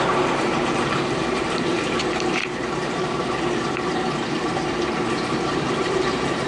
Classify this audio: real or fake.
fake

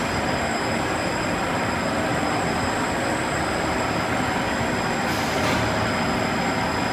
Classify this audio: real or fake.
real